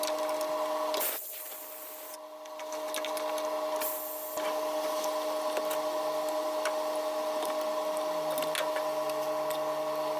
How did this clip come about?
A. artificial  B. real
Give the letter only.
B